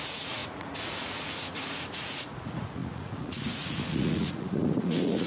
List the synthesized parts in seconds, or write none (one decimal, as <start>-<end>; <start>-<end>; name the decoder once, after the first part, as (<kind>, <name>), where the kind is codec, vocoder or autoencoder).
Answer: 0.0-5.3 (vocoder, Vocos)